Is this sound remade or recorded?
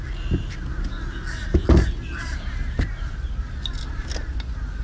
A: recorded